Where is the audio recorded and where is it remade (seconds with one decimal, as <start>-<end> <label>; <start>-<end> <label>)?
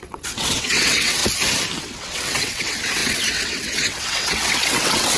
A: 0.0-1.2 remade; 1.2-1.8 recorded; 1.8-5.2 remade